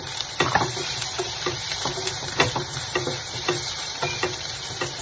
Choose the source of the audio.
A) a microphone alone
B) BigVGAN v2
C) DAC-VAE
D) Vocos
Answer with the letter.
B